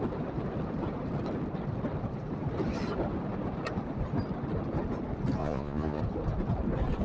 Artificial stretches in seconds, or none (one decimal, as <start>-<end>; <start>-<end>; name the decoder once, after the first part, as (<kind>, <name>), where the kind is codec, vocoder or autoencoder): 5.4-6.0 (vocoder, Vocos)